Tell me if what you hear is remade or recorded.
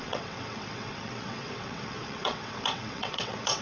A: remade